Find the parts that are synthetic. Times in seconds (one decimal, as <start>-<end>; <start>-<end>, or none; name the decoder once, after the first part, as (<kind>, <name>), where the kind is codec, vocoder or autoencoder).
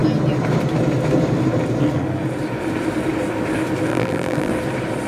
3.9-4.5 (vocoder, BigVGAN v2)